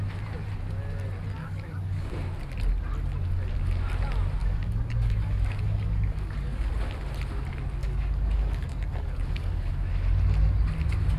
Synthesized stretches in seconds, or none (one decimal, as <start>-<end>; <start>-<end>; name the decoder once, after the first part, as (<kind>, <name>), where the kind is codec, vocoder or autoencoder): 1.4-2.1 (codec, DAC); 4.4-6.7; 7.8-9.7